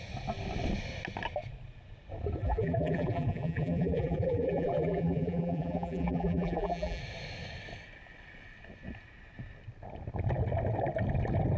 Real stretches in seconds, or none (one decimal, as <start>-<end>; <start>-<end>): 0.0-2.4; 7.0-11.6